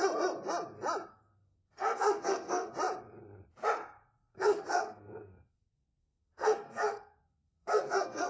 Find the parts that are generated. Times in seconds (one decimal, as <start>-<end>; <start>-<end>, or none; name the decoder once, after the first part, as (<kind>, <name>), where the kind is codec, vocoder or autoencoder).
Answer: 1.1-2.7 (codec, SNAC); 4.3-8.3